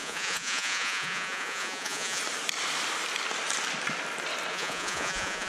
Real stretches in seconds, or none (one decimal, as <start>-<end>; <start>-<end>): 2.2-4.5